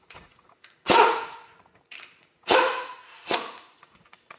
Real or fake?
fake